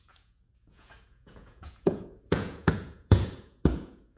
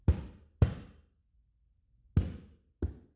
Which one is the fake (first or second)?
first